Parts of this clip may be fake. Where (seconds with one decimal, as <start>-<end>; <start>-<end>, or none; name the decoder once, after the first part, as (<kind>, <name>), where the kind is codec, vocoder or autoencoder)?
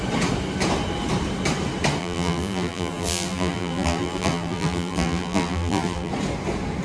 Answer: 2.0-6.1 (vocoder, BigVGAN v2)